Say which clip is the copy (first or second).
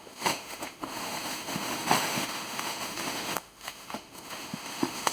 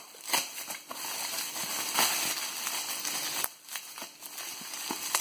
first